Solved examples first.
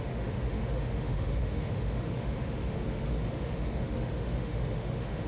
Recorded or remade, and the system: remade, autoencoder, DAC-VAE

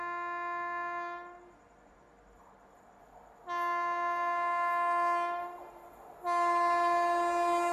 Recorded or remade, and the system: recorded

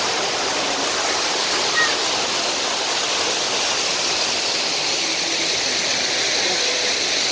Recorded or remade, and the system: recorded